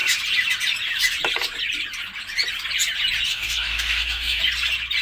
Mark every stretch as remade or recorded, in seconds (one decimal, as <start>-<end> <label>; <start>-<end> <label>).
0.0-3.3 recorded; 3.3-4.4 remade; 4.4-5.0 recorded

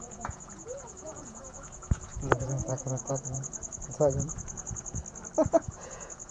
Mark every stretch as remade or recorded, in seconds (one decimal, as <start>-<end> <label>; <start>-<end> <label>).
0.0-5.0 remade; 5.0-5.5 recorded; 5.5-6.3 remade